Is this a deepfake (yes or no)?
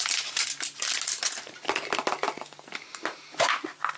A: no